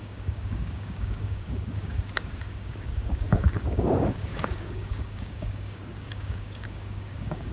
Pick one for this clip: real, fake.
fake